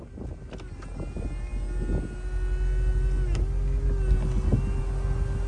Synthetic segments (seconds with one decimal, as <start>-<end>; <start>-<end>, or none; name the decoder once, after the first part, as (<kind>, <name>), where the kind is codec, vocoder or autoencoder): none